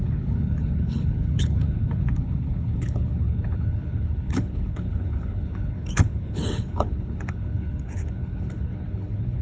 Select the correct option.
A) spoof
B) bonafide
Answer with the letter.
A